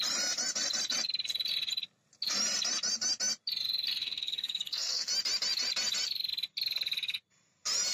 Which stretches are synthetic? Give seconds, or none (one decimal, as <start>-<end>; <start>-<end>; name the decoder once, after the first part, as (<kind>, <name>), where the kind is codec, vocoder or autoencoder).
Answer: 4.0-5.1 (codec, SNAC)